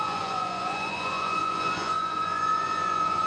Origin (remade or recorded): remade